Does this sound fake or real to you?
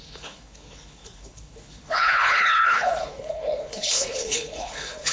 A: fake